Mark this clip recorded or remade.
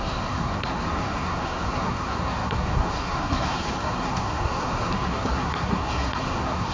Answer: remade